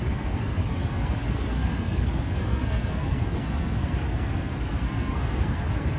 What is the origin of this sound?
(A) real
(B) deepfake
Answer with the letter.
B